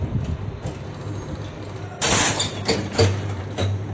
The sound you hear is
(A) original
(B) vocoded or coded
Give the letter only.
A